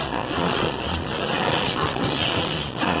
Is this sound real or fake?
fake